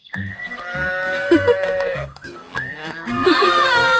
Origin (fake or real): fake